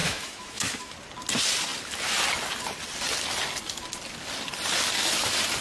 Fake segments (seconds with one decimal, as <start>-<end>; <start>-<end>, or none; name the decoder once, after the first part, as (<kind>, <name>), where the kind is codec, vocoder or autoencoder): 0.0-0.9 (autoencoder, DAC-VAE)